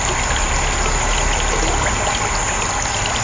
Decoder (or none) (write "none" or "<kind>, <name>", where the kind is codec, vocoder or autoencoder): none